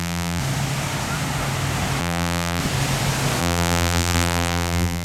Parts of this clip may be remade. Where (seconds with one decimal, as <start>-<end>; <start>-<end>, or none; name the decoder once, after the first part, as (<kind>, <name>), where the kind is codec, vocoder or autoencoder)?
0.0-0.4 (vocoder, BigVGAN v2); 2.0-2.6; 3.4-5.0